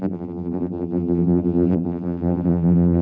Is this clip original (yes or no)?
no